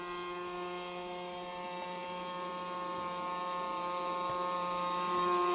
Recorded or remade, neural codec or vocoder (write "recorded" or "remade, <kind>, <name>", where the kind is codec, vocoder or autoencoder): recorded